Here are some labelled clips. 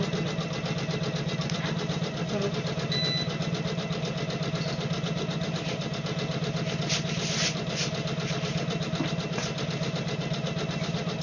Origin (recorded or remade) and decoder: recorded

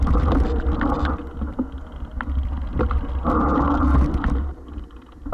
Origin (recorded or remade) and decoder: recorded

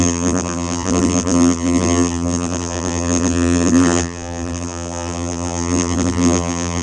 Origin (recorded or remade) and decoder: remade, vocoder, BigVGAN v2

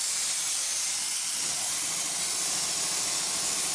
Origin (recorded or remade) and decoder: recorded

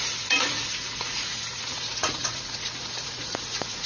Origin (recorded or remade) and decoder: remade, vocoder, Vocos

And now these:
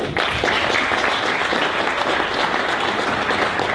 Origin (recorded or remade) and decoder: recorded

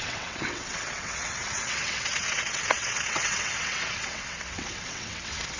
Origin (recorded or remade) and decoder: remade, vocoder, WaveNeXt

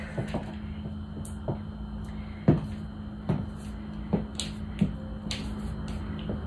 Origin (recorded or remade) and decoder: recorded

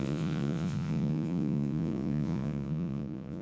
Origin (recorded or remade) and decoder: remade, vocoder, Vocos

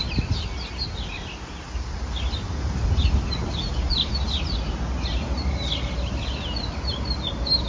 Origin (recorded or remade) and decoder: recorded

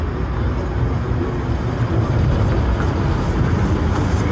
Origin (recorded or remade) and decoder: recorded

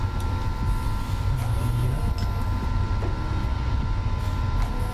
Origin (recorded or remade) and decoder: recorded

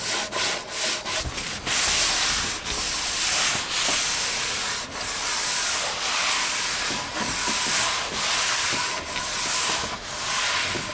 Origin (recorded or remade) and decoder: recorded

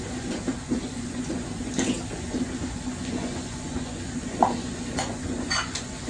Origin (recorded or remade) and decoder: remade, vocoder, Vocos